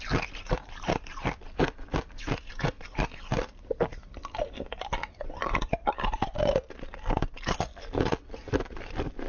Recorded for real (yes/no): yes